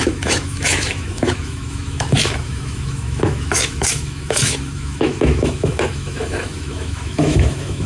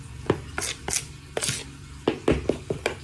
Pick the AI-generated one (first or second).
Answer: first